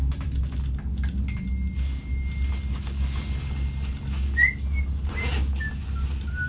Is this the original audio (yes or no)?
yes